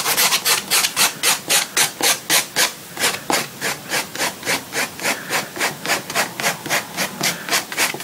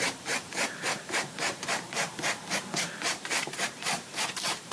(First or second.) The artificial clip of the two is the second